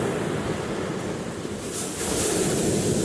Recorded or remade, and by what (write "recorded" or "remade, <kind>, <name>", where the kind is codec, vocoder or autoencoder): recorded